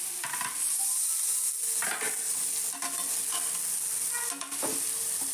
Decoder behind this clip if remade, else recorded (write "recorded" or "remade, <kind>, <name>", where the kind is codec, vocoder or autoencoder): recorded